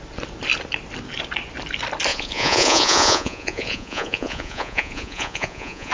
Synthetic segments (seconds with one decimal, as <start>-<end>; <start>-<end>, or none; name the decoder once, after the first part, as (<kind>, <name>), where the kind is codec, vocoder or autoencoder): 2.1-5.9 (vocoder, Vocos)